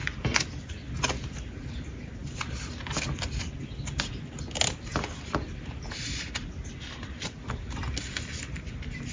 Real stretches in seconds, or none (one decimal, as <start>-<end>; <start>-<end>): 0.0-9.1

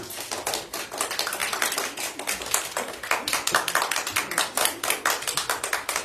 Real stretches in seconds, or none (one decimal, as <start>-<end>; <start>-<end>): 0.0-6.0

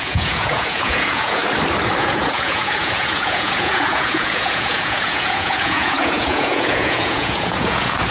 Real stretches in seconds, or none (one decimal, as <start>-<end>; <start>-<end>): 1.4-2.0

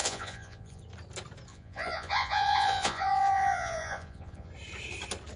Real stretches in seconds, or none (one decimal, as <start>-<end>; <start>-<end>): 0.8-1.5; 4.5-5.4

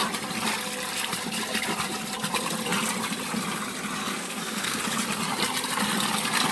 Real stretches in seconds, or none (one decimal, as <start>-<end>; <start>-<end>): 0.0-4.0; 4.8-6.5